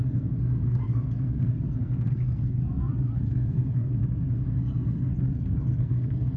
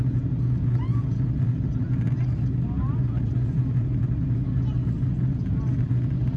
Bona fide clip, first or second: second